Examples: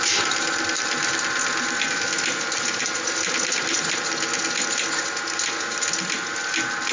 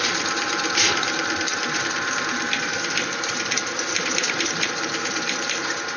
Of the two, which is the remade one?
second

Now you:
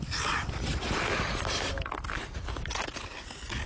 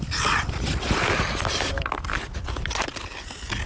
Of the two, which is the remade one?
second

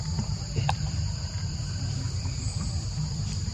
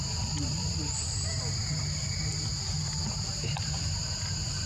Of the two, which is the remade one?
first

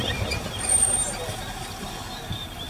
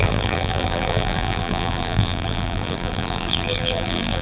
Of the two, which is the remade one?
second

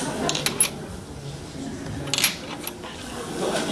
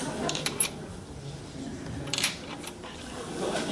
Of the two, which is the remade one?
second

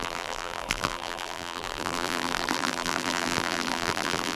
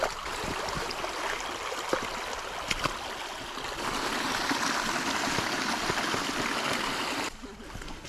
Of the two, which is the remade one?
first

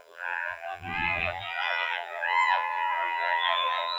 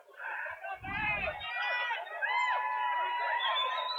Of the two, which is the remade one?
first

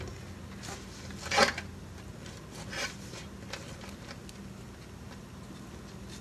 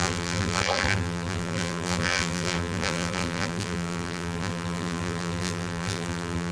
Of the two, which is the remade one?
second